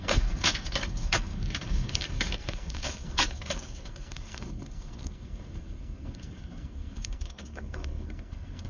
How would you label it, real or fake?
fake